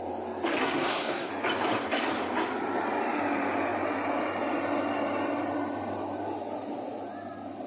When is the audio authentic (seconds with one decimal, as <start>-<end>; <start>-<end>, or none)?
0.0-0.6; 1.3-7.7